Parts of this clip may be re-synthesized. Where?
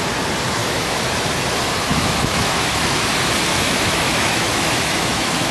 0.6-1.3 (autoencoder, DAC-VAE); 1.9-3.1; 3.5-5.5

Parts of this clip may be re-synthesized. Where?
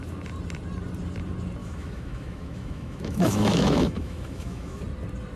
1.6-4.8 (autoencoder, DAC-VAE)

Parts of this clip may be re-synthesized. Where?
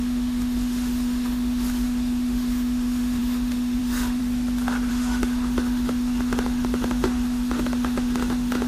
0.0-4.2 (autoencoder, DAC-VAE); 4.9-8.7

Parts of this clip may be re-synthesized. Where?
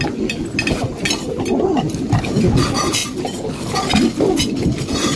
none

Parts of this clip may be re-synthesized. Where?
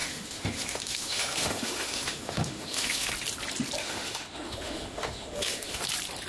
0.0-3.1 (autoencoder, DAC-VAE); 3.8-5.8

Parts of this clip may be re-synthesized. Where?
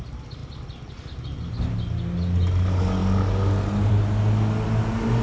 none